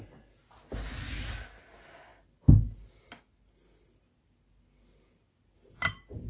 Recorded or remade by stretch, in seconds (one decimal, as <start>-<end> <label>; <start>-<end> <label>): 0.0-6.3 recorded